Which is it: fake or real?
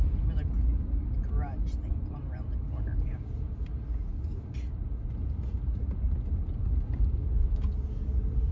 real